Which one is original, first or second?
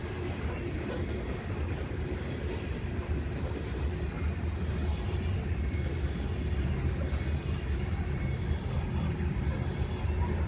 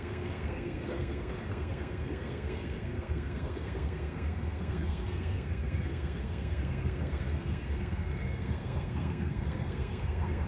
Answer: first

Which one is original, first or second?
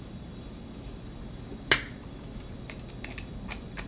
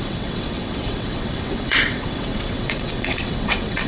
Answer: first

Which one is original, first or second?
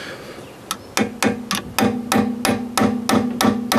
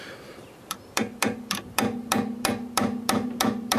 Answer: first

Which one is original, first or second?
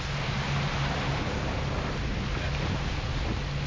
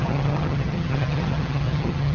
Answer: first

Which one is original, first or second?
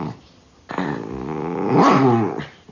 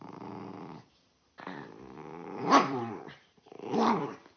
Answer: first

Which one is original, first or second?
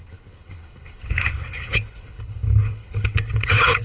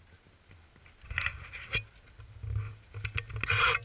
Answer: second